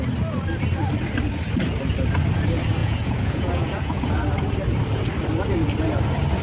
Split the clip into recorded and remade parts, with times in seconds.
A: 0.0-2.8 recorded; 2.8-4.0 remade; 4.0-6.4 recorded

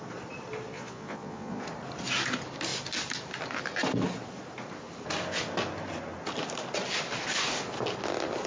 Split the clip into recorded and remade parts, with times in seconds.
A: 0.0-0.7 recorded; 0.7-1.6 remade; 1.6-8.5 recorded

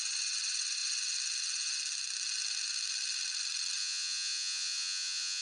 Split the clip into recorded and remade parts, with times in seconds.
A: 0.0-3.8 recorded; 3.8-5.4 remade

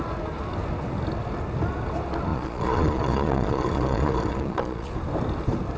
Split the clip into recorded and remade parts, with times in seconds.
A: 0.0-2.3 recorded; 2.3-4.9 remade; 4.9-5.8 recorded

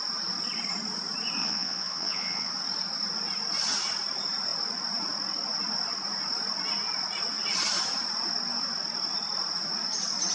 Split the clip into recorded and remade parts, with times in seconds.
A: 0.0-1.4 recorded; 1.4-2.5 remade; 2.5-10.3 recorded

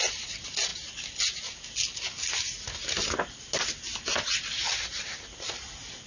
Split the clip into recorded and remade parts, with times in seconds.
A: 0.0-6.1 recorded